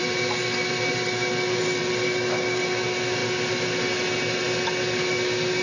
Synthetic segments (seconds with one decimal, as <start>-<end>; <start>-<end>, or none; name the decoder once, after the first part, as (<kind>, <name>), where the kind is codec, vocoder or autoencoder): none

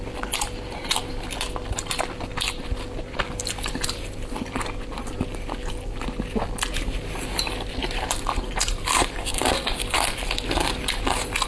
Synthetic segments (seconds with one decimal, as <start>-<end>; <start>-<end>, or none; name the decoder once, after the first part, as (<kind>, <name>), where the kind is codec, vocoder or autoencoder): 7.8-9.4 (vocoder, BigVGAN v2)

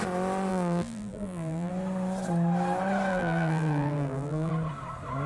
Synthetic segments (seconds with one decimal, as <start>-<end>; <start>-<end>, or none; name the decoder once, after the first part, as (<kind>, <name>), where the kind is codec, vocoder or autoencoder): 0.5-1.7 (vocoder, BigVGAN v2); 3.1-4.5

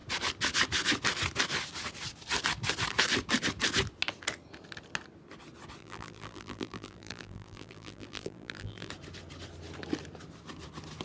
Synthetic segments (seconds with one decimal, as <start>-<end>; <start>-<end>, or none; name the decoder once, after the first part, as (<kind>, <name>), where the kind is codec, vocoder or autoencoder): 5.8-8.9 (vocoder, BigVGAN v2)

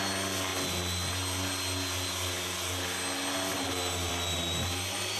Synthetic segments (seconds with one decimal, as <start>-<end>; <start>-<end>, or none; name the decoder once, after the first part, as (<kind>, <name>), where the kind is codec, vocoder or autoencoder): none